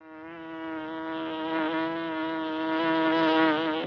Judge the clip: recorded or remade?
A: recorded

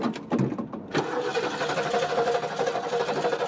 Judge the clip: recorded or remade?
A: recorded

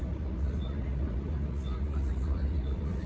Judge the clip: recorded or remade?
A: remade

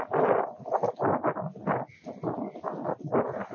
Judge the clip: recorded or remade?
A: recorded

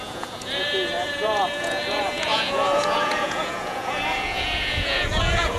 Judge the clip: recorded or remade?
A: remade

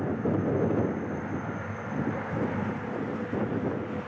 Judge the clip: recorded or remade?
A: recorded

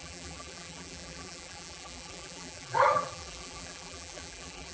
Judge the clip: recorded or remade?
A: remade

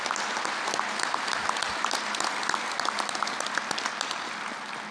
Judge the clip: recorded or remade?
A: recorded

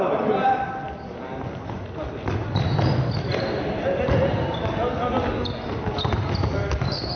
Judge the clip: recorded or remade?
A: recorded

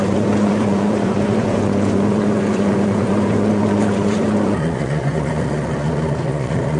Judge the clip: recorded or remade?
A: remade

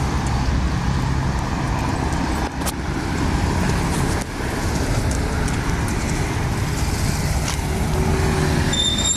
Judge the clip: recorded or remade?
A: recorded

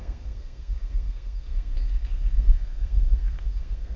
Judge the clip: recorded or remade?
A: remade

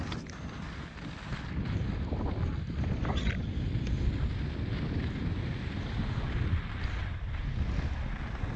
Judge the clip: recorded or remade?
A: recorded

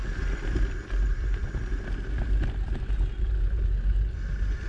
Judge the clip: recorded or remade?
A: recorded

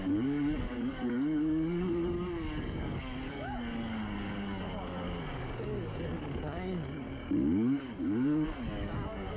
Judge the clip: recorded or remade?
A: remade